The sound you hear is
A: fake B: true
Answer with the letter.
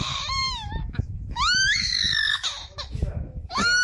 A